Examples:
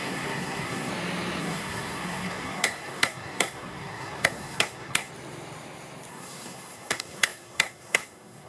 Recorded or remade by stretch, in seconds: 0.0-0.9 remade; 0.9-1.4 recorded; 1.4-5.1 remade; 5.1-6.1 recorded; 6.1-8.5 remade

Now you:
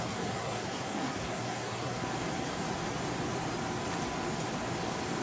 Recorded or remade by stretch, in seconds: 0.0-2.0 remade; 2.0-5.2 recorded

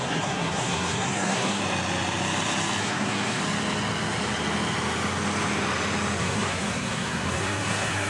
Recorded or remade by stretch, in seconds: 0.0-1.6 remade; 1.6-2.8 recorded; 2.8-3.4 remade; 3.4-6.2 recorded; 6.2-8.1 remade